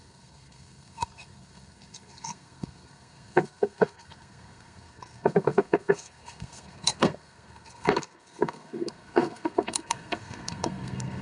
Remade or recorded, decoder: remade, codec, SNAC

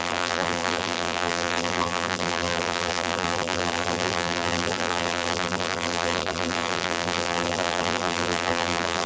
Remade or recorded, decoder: remade, vocoder, BigVGAN v2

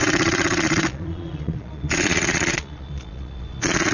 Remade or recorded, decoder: remade, vocoder, Vocos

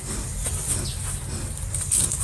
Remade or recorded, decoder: recorded